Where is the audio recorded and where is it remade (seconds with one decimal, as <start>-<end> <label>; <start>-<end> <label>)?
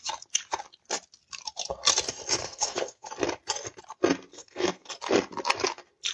0.0-2.4 recorded; 2.4-3.1 remade; 3.1-4.3 recorded; 4.3-4.9 remade; 4.9-6.1 recorded